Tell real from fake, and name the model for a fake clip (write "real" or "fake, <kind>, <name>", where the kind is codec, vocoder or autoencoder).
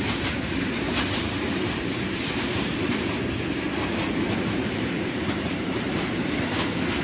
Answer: fake, vocoder, BigVGAN v2